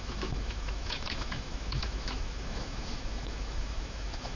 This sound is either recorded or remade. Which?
remade